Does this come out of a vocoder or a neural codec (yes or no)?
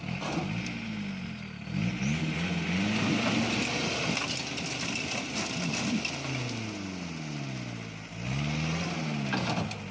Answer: no